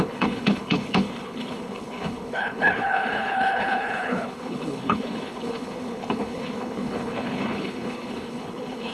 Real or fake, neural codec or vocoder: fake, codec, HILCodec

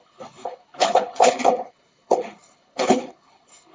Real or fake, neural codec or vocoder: fake, codec, HILCodec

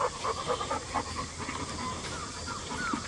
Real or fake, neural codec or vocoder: real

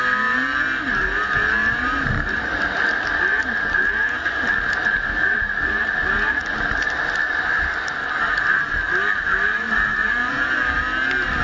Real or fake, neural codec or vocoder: real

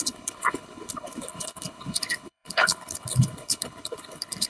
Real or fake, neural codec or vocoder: fake, codec, HILCodec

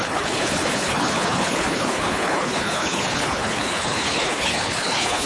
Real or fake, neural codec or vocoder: fake, codec, HILCodec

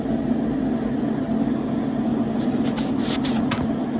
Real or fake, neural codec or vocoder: real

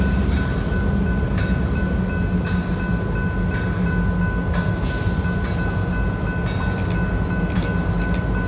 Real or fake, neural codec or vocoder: real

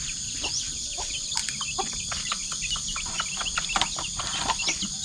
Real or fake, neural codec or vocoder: real